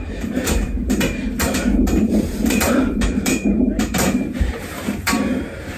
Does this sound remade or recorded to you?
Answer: remade